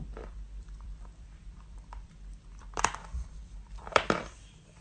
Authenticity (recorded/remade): remade